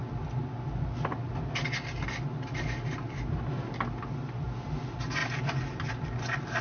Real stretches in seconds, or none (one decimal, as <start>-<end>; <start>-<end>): 0.0-6.6